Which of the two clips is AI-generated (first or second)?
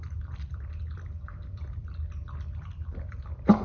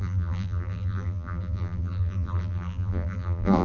second